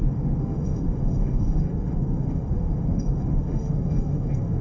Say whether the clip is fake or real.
fake